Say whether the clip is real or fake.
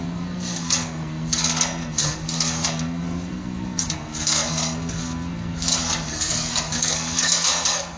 fake